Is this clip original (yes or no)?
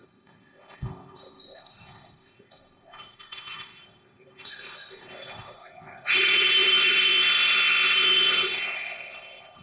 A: no